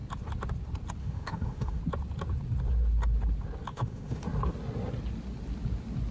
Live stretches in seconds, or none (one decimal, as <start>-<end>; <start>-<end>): 0.0-1.0; 1.8-3.7; 4.2-6.1